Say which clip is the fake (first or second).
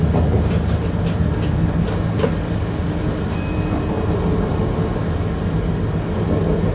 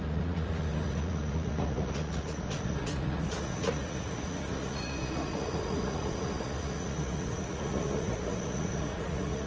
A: second